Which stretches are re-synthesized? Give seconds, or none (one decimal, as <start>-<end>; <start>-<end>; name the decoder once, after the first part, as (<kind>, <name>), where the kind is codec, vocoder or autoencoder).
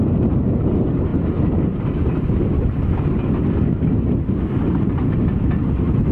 none